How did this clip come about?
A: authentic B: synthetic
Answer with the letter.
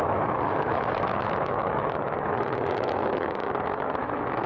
B